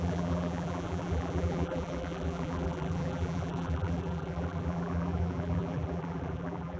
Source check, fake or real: fake